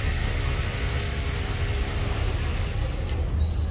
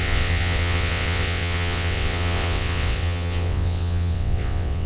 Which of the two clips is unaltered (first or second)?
first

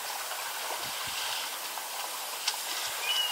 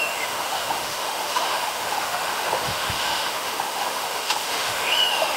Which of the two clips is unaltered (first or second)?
first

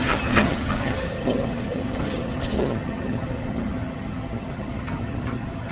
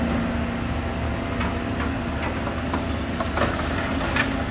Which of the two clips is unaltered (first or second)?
second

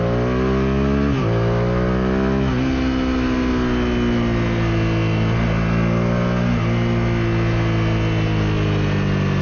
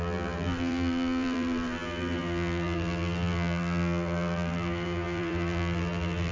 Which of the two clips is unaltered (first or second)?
first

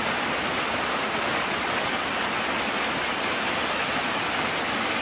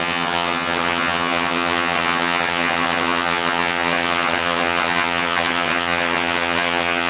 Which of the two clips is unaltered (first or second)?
first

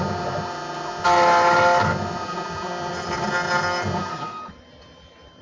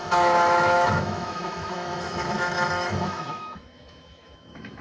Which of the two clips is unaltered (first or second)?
first